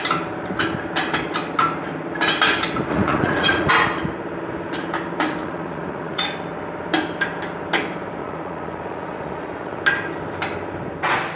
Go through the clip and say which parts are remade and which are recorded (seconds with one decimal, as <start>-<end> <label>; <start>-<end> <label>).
0.0-2.9 recorded; 2.9-3.7 remade; 3.7-5.4 recorded; 5.4-6.3 remade; 6.3-8.2 recorded; 8.2-9.8 remade; 9.8-11.4 recorded